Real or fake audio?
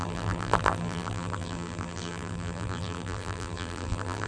fake